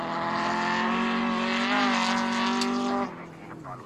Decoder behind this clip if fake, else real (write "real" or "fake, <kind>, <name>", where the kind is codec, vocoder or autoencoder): real